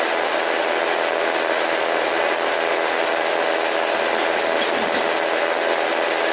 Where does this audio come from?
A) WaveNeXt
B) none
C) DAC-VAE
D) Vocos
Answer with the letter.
B